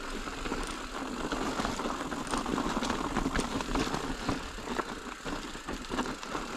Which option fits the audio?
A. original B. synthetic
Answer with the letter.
A